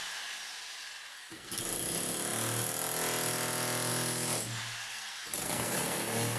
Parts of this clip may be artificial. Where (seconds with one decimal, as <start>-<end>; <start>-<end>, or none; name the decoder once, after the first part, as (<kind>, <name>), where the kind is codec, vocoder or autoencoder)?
1.1-1.6 (codec, SNAC); 4.9-6.4